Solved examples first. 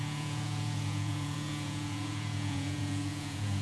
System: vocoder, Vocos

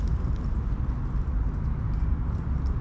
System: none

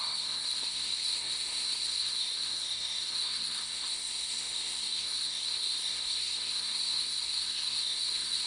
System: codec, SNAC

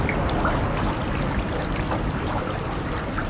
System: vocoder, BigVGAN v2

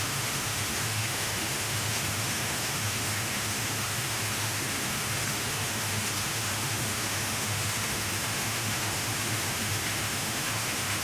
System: autoencoder, DAC-VAE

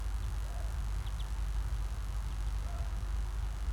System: none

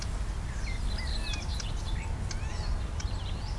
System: none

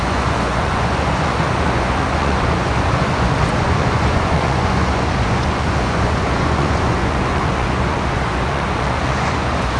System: vocoder, Vocos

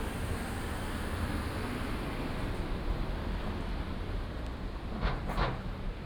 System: none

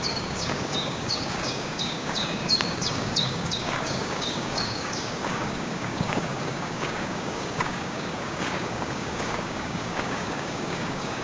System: codec, DAC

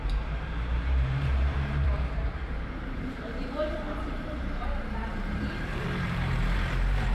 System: vocoder, BigVGAN v2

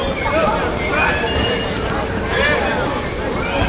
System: none